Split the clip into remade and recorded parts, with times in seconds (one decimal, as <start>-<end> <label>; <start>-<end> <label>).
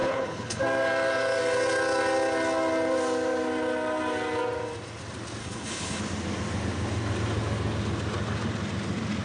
0.0-0.6 remade; 0.6-5.4 recorded; 5.4-6.0 remade; 6.0-9.2 recorded